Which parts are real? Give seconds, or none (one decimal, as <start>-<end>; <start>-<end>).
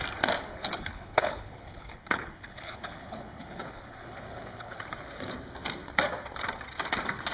0.0-0.5; 4.9-7.3